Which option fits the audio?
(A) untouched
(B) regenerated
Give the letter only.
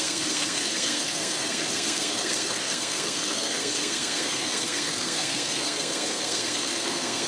B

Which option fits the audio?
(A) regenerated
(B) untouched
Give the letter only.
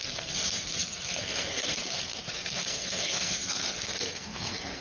A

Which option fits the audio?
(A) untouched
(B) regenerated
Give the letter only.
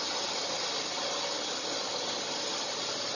A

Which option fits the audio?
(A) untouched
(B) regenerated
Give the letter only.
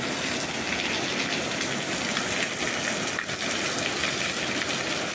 A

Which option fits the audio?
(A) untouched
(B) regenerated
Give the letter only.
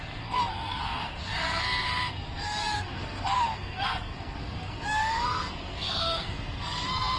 B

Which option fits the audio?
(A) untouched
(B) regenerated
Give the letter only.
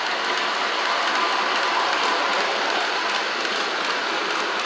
A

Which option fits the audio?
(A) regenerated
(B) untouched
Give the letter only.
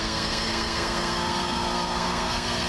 A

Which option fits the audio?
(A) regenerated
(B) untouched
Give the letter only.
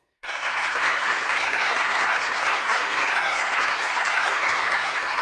A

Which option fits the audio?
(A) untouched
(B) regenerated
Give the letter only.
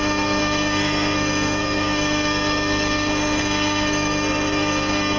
B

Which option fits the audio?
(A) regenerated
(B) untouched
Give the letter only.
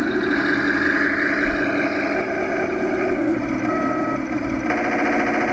B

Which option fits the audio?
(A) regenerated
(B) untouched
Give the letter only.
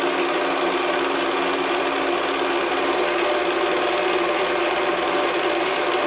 B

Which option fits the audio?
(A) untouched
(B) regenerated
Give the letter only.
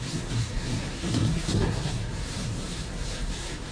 B